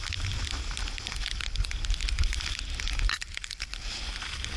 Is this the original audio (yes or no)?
yes